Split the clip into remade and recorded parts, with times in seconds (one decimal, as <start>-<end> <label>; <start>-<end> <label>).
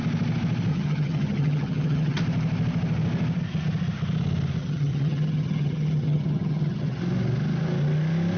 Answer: 0.0-0.7 recorded; 0.7-2.2 remade; 2.2-4.6 recorded; 4.6-7.0 remade; 7.0-8.4 recorded